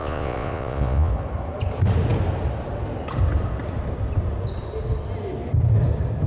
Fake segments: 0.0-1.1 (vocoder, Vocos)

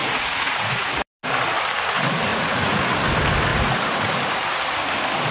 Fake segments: 0.0-0.9 (vocoder, Vocos); 2.3-2.8; 3.5-4.2

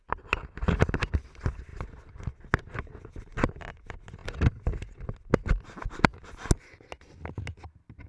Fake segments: none

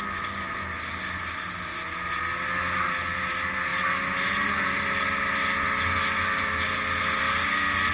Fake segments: none